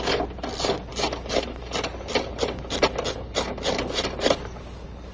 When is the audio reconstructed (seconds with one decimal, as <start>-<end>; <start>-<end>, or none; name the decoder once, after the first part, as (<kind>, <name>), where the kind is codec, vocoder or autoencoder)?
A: none

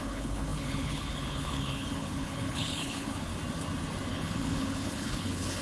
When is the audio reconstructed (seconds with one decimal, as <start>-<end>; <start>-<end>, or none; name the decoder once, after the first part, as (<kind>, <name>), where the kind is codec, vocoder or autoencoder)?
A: 0.0-3.3 (codec, HILCodec); 4.1-5.6

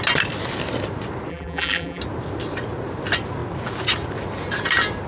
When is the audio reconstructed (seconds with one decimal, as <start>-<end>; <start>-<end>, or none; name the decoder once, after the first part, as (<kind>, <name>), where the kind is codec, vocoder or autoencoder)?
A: 1.3-2.0 (vocoder, BigVGAN v2)

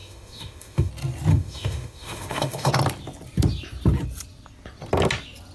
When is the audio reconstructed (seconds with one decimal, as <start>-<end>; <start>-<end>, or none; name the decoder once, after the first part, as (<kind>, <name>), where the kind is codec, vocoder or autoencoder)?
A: 0.0-0.9 (autoencoder, DAC-VAE); 1.3-2.7